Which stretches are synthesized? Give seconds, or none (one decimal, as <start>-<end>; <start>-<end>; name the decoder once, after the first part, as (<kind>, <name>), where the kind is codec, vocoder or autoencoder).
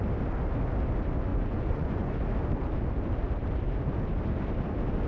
1.3-2.1 (vocoder, Vocos)